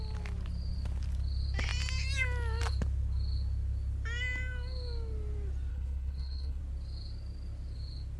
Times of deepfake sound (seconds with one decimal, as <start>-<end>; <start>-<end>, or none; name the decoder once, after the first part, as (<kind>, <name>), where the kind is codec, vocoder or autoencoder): 5.7-6.6 (codec, HILCodec)